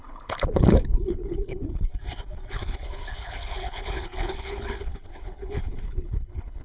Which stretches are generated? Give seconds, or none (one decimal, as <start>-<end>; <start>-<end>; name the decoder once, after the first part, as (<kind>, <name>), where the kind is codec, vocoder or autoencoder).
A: 0.0-1.9 (codec, HILCodec); 2.5-6.6